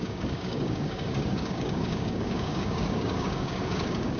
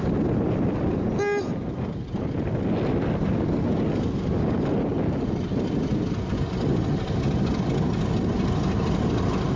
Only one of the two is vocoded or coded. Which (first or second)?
first